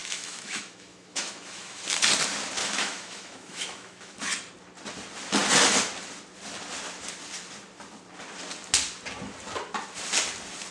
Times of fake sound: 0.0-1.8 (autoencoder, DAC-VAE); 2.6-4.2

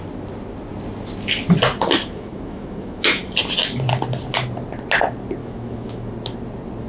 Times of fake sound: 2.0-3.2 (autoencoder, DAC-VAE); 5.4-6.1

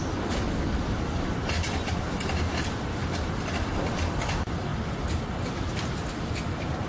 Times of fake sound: none